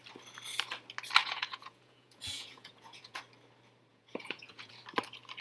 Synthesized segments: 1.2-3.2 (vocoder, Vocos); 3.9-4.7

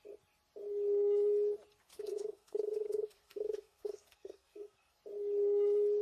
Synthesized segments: 1.8-5.0 (codec, SNAC)

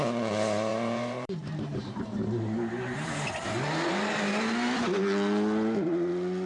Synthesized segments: 0.7-2.0 (vocoder, BigVGAN v2)

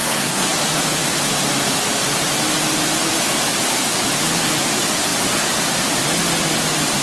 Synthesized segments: 0.0-0.5 (codec, SNAC)

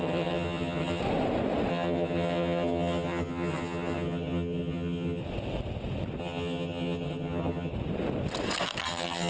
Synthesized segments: 0.0-1.0 (vocoder, HiFi-GAN); 1.7-5.2; 6.2-7.7; 8.8-9.3

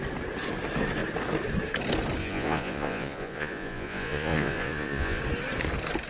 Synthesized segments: 2.2-5.2 (vocoder, Vocos)